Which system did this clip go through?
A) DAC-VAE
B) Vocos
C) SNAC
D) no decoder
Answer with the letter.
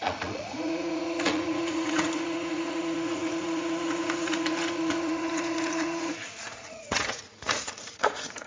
B